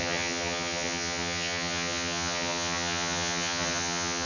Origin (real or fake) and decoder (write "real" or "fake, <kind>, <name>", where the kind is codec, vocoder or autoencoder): fake, vocoder, HiFi-GAN